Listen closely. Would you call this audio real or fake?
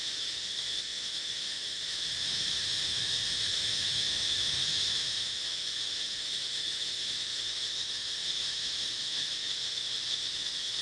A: fake